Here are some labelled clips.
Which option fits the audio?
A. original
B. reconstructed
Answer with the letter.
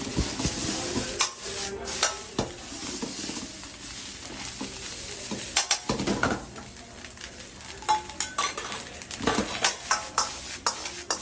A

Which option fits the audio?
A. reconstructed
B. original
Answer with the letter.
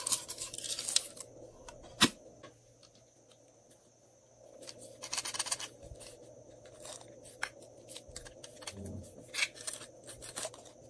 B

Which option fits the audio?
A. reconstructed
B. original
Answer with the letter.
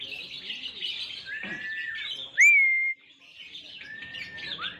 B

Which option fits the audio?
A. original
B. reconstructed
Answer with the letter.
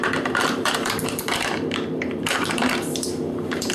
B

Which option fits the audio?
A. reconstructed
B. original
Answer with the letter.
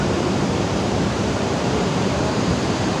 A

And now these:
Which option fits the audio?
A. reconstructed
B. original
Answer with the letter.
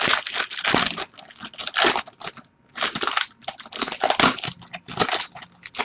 B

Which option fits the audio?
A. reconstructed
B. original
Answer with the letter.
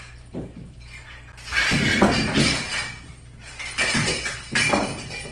B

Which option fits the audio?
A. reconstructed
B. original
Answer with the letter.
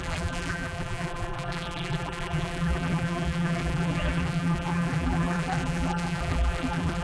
A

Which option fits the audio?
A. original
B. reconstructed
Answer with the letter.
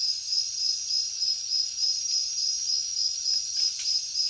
B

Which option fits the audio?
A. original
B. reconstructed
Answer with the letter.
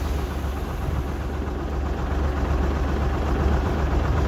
A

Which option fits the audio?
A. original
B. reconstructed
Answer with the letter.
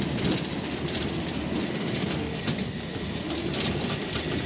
A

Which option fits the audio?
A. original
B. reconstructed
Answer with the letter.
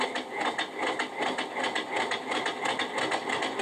A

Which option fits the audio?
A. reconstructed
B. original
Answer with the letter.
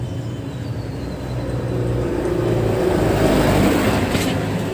A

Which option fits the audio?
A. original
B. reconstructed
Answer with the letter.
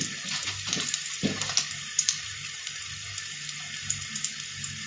B